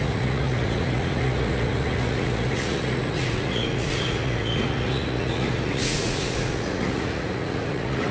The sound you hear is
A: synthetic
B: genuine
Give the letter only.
A